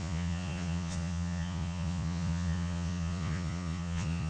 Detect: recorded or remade remade